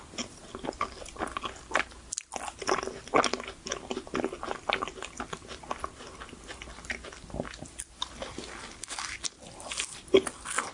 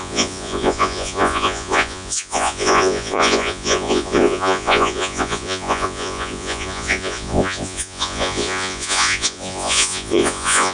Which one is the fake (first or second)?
second